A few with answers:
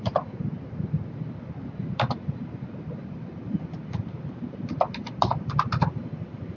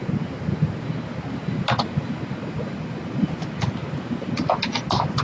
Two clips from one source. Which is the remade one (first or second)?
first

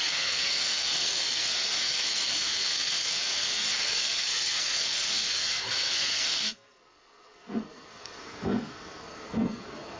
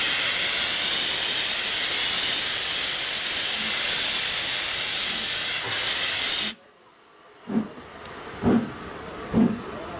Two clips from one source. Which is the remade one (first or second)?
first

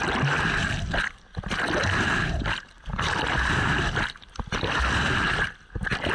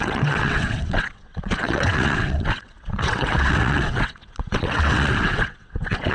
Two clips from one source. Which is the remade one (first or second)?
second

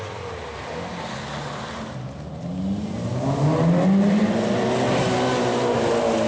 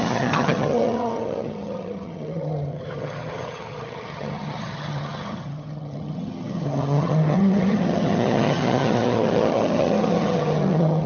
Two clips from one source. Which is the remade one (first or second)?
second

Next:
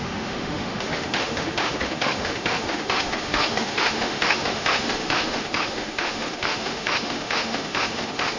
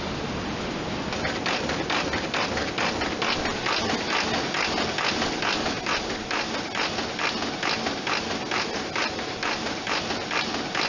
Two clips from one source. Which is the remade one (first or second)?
first